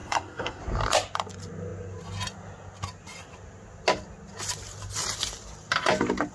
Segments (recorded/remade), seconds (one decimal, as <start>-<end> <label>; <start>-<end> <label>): 0.0-0.6 remade; 0.6-6.3 recorded